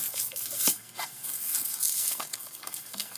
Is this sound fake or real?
fake